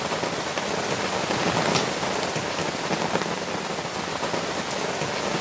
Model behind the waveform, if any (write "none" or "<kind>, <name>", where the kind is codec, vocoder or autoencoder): none